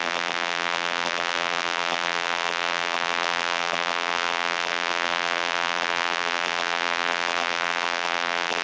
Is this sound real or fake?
fake